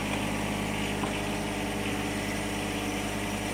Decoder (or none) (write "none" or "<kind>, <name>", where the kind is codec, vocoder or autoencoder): none